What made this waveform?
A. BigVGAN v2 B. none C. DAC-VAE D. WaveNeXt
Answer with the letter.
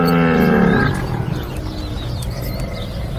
B